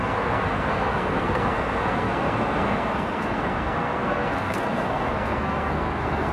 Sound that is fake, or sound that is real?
fake